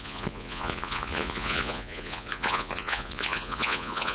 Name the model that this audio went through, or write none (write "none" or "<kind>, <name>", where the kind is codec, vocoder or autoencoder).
vocoder, Vocos